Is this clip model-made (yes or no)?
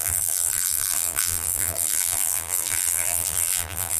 yes